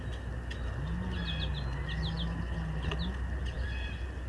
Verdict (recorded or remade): recorded